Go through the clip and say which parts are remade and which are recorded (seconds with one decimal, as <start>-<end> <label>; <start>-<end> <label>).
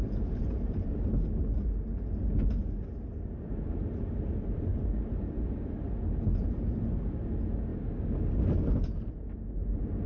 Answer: 0.0-1.1 remade; 1.1-10.1 recorded